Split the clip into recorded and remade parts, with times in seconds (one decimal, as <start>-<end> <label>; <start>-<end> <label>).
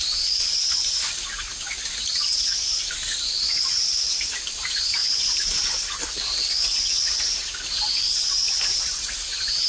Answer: 0.0-1.5 remade; 1.5-3.0 recorded; 3.0-9.7 remade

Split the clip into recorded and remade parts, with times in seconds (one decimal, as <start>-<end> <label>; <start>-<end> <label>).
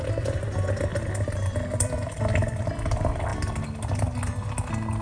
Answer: 0.0-0.9 recorded; 0.9-2.6 remade; 2.6-5.0 recorded